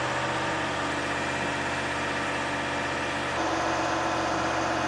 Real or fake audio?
real